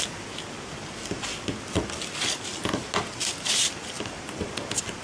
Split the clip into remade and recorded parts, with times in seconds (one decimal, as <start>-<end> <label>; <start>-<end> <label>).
0.0-5.0 recorded